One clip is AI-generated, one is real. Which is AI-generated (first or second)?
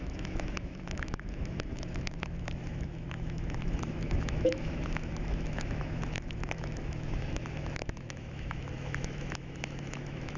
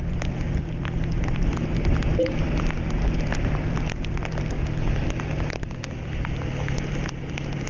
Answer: first